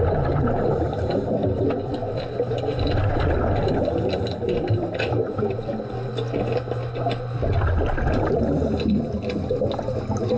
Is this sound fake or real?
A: real